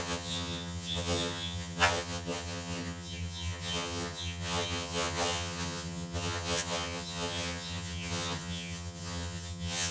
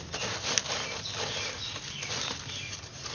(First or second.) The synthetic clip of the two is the first